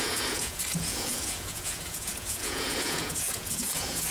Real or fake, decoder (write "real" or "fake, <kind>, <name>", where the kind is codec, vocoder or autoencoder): fake, vocoder, Vocos